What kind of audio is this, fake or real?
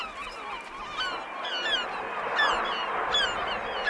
real